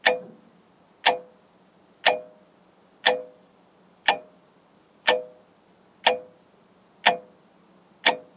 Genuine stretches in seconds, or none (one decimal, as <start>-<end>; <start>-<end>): 0.0-3.2; 5.8-8.4